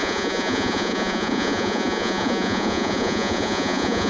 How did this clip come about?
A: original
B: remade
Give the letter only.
B